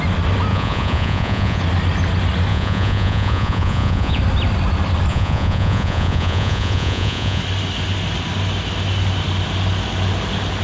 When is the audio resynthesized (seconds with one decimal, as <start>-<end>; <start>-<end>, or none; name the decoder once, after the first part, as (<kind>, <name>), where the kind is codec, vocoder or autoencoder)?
0.5-1.6 (vocoder, Vocos); 2.5-4.2; 5.1-7.4

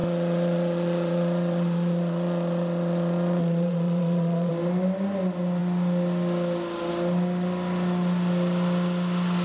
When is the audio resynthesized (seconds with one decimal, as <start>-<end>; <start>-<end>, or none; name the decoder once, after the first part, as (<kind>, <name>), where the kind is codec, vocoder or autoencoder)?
0.0-4.5 (vocoder, Vocos)

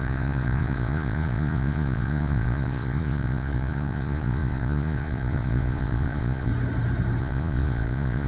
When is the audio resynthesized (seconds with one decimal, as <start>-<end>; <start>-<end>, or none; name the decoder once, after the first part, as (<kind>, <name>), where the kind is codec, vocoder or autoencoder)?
0.0-6.5 (vocoder, Vocos); 7.2-8.3

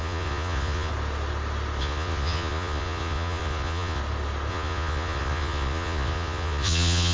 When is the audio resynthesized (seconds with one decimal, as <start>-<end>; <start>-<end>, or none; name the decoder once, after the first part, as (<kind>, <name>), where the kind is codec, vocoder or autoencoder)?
0.0-0.9 (vocoder, Vocos); 1.8-4.0; 4.5-7.1

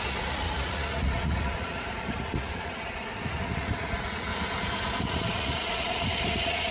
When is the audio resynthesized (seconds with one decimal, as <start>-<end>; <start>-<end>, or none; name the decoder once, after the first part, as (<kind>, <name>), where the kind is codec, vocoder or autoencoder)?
0.0-4.3 (vocoder, Vocos); 5.0-6.7

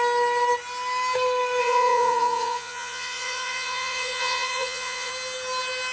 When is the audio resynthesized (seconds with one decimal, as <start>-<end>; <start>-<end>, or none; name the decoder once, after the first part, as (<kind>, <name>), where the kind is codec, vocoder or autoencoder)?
1.6-5.1 (vocoder, Vocos)

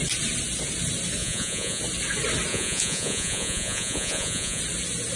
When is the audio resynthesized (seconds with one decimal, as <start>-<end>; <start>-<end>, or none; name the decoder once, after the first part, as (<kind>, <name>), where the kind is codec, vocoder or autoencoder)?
1.2-1.8 (vocoder, Vocos); 2.5-4.6

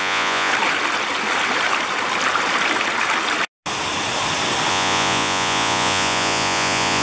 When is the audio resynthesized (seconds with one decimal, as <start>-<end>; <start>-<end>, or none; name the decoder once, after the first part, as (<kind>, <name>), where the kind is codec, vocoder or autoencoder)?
0.0-0.5 (vocoder, Vocos); 4.7-7.0